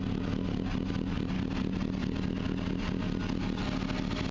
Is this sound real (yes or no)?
yes